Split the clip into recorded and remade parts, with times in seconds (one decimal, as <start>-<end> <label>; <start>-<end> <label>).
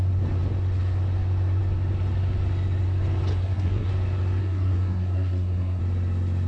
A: 0.0-3.3 recorded; 3.3-3.9 remade; 3.9-4.4 recorded; 4.4-5.8 remade; 5.8-6.5 recorded